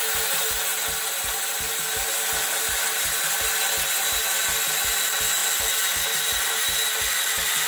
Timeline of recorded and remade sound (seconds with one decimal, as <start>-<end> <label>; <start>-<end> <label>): 0.0-7.7 recorded